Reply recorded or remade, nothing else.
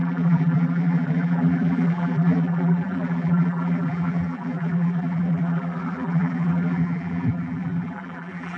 remade